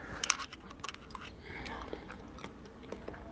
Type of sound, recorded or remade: recorded